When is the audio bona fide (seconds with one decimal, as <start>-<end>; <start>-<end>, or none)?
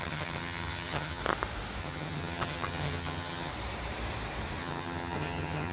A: 1.2-1.8; 3.5-4.6